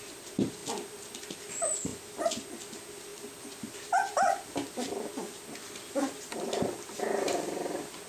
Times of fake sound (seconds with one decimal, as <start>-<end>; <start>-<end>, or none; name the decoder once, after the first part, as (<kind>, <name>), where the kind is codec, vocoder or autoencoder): none